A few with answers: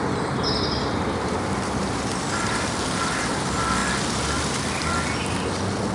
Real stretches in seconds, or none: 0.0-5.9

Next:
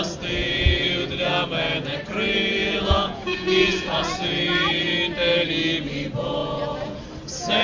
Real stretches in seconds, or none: 0.0-0.4; 1.3-2.6; 4.4-6.4; 7.0-7.6

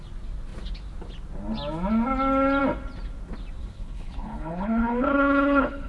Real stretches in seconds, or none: 0.0-3.6

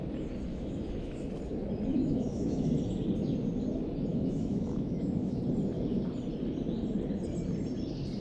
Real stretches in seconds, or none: 0.0-0.5; 1.3-1.9; 2.8-4.1; 5.4-8.2

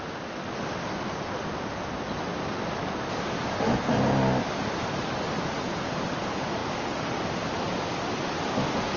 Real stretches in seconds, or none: 0.0-9.0

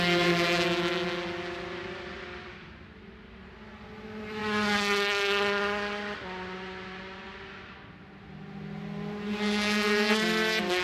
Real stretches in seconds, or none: 0.0-10.8

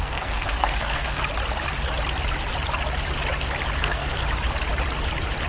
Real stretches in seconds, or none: 1.2-3.8; 4.2-5.5

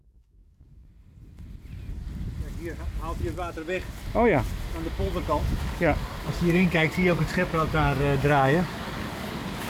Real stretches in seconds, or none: 0.9-5.2